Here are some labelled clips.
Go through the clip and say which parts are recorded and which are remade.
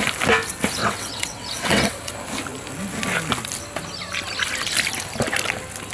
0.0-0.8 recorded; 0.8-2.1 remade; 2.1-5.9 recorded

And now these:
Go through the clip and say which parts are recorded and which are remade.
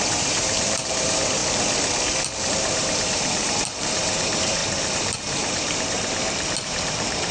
0.0-1.4 remade; 1.4-2.5 recorded; 2.5-7.3 remade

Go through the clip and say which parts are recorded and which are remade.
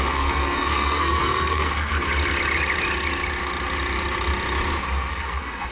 0.0-1.9 remade; 1.9-5.1 recorded; 5.1-5.7 remade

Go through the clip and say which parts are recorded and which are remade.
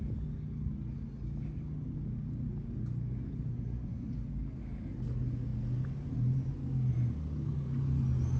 0.0-3.5 recorded; 3.5-4.1 remade; 4.1-8.4 recorded